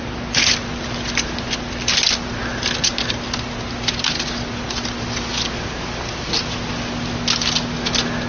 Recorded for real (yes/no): yes